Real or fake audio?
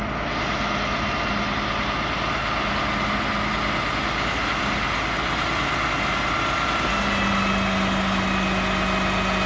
real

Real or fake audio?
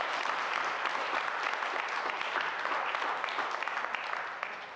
real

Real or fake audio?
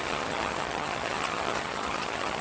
fake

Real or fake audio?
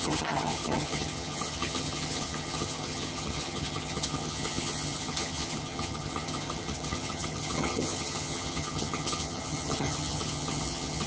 fake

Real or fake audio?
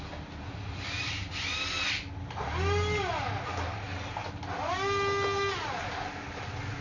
real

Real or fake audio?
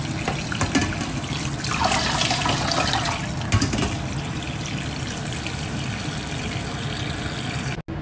real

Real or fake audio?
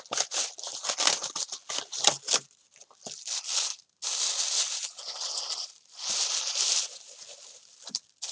real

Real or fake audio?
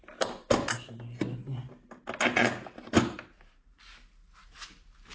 real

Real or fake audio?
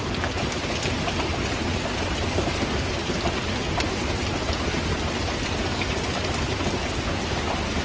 real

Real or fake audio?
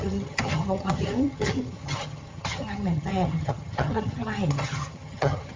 fake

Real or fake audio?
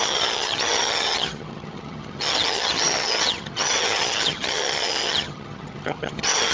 fake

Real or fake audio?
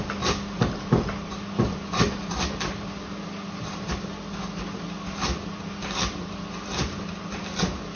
real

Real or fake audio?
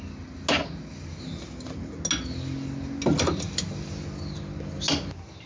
real